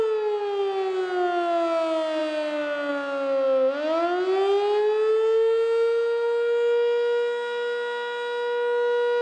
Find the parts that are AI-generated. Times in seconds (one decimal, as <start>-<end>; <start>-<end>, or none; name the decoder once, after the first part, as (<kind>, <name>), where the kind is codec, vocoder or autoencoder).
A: none

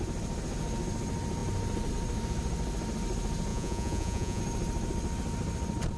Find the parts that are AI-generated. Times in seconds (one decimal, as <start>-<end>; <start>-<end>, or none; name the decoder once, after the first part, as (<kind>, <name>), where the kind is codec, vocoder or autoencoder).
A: 3.5-4.4 (vocoder, Vocos)

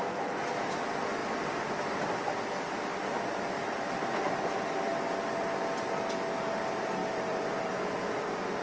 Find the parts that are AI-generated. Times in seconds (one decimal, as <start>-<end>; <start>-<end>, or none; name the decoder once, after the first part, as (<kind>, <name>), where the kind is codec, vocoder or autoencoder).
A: 1.2-2.1 (vocoder, BigVGAN v2); 2.9-4.0; 7.0-7.7